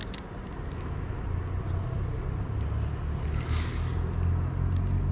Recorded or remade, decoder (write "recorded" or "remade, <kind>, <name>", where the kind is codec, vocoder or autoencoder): recorded